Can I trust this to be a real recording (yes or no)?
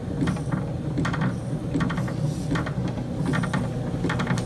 yes